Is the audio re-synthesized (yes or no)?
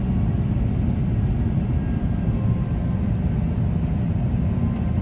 no